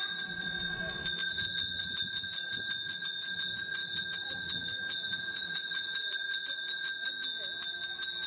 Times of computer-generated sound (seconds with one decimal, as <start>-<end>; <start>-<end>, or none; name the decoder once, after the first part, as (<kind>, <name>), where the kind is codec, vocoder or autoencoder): 1.2-3.4 (vocoder, Vocos); 3.8-7.1